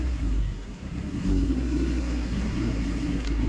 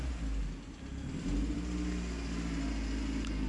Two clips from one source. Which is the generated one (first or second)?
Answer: first